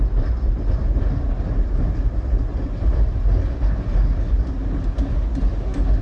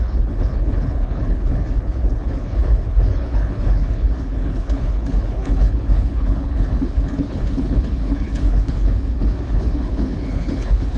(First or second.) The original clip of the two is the first